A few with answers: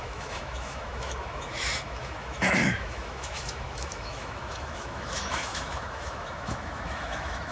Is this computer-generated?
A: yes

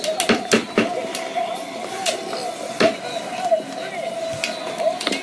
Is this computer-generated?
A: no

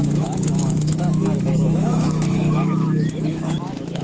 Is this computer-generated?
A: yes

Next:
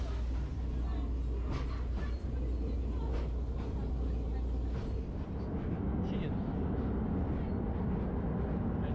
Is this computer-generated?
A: no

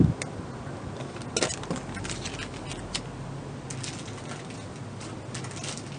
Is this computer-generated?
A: no